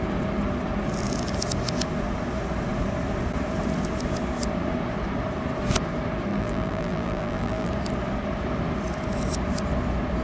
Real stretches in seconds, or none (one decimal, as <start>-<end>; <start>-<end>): 0.0-6.3; 7.7-10.2